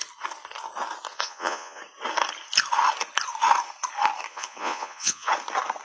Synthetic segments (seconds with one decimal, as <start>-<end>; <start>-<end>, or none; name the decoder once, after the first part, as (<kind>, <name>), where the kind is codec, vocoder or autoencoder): 1.1-1.8 (vocoder, Vocos); 4.3-5.3